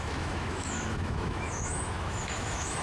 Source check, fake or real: fake